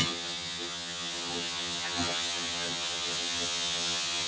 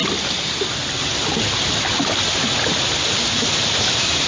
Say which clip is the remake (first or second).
first